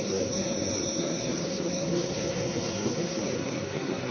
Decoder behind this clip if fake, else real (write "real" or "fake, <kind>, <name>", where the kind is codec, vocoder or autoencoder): fake, codec, SNAC